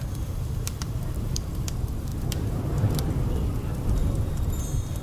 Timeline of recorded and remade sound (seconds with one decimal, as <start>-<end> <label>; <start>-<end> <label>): 0.0-5.0 remade